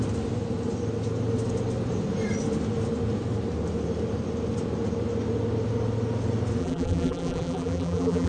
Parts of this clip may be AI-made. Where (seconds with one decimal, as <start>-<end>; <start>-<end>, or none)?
6.6-8.3

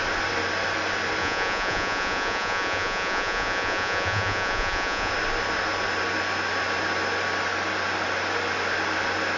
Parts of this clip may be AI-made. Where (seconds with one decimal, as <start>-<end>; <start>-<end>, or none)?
1.2-5.1

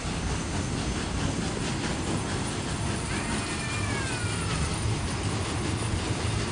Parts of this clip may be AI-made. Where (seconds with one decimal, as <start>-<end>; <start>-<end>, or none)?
none

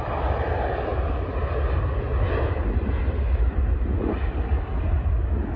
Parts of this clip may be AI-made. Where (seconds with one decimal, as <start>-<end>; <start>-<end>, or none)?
none

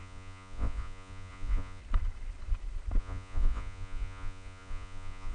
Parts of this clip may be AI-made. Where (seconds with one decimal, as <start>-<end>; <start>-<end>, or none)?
0.0-1.8; 3.0-5.3

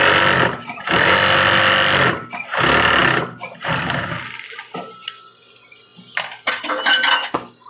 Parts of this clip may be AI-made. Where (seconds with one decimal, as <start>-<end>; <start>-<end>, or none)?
none

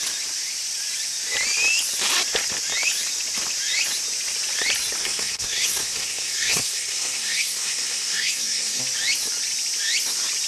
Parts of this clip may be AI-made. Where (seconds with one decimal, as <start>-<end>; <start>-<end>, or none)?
5.0-8.8

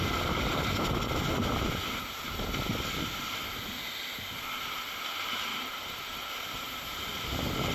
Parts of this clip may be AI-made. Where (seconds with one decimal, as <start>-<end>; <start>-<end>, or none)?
5.5-6.3